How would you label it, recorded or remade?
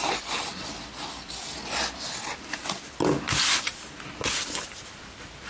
recorded